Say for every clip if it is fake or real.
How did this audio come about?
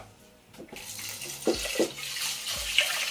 real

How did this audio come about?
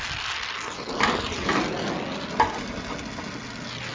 real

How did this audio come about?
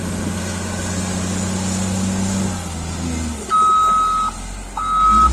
real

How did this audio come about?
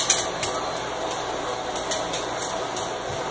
real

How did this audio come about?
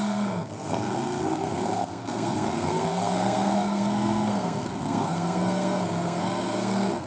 fake